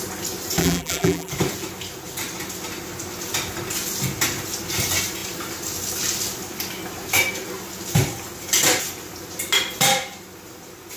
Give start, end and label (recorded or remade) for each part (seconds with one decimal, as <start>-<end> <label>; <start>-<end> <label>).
0.0-0.6 recorded; 0.6-1.3 remade; 1.3-11.0 recorded